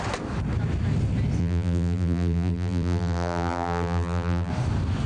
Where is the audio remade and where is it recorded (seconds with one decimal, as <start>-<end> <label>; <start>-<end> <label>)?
0.0-1.4 recorded; 1.4-4.5 remade; 4.5-5.1 recorded